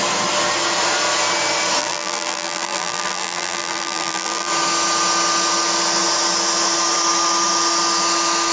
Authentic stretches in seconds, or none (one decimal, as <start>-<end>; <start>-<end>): 0.0-1.8; 4.5-8.5